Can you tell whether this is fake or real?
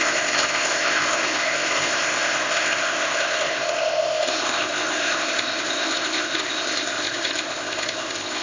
fake